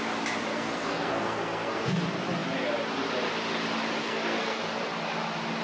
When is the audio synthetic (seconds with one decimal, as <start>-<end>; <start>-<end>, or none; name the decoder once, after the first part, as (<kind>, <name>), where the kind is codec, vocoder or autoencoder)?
0.5-2.0 (codec, SNAC); 4.0-4.6